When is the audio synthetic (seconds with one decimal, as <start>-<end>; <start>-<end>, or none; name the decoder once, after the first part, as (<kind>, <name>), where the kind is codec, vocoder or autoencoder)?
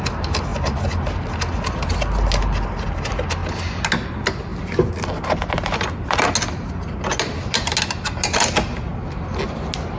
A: none